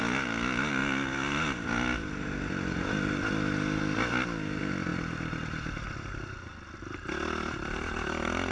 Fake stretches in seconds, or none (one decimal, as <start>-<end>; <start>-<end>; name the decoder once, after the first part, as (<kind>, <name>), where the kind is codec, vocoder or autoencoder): none